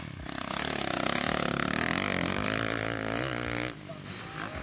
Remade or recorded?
recorded